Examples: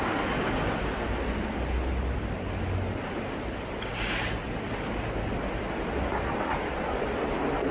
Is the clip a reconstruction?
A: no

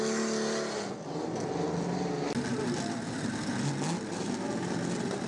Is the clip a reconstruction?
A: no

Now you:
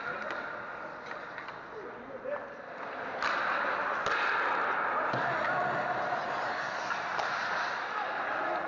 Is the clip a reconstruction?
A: no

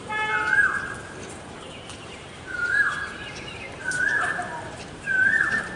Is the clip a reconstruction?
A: yes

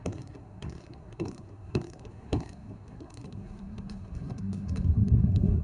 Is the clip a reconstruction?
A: yes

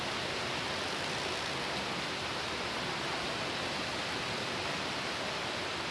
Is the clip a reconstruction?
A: no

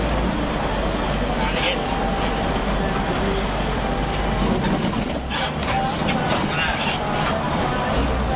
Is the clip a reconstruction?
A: no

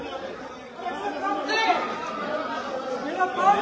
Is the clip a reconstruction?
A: no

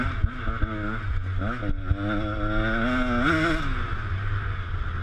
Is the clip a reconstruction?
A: no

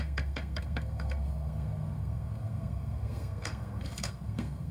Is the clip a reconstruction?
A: yes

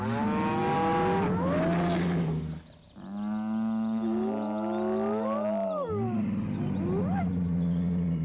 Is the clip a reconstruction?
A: no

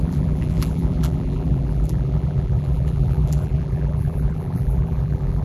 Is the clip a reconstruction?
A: yes